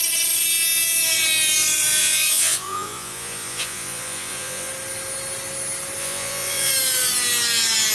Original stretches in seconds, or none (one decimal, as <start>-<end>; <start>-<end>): 0.0-2.0; 4.7-6.0; 6.7-7.9